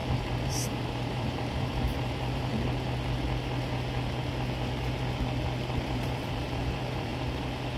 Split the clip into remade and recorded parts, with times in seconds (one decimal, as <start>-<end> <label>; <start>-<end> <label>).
0.0-2.5 remade; 2.5-5.8 recorded; 5.8-7.1 remade; 7.1-7.8 recorded